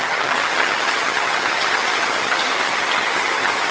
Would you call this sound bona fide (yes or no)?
no